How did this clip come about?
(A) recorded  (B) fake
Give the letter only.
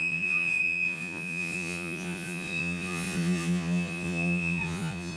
B